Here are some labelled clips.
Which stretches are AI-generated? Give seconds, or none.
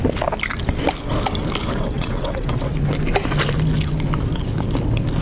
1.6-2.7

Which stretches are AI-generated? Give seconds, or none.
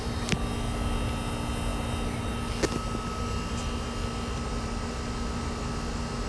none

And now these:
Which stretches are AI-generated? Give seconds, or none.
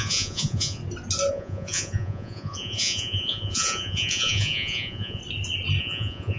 0.0-0.8; 1.3-5.2; 5.8-6.4